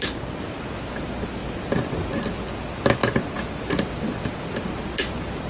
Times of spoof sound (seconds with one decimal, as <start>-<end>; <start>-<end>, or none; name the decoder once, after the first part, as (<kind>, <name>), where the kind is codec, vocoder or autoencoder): none